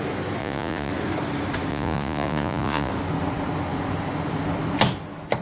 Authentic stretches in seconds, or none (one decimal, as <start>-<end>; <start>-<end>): 0.0-0.4; 0.9-1.7; 2.9-5.4